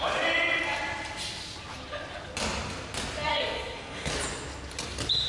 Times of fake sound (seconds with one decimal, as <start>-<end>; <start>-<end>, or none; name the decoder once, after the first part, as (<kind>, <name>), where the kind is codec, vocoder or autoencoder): 3.3-4.1 (codec, SNAC)